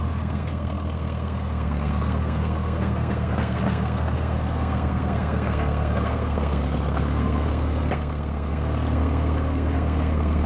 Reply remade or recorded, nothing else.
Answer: remade